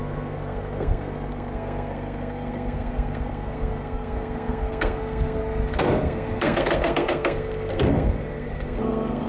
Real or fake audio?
fake